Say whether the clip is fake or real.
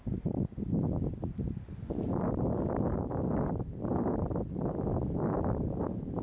real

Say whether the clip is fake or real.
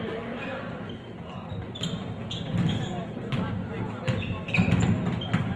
real